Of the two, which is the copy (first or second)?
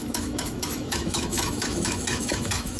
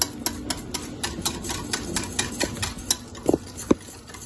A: first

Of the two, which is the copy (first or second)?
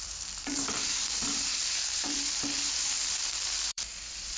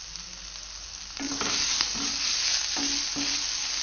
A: first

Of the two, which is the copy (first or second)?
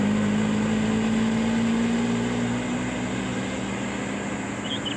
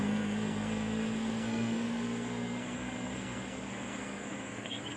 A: second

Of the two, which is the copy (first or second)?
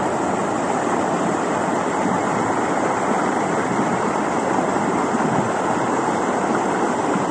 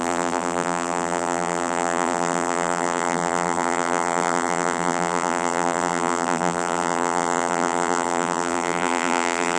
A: second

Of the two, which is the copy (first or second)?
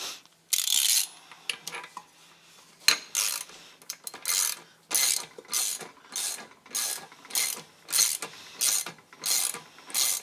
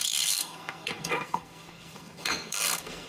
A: second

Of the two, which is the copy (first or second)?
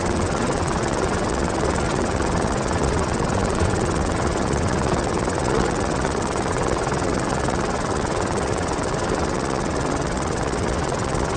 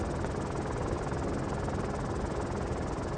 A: first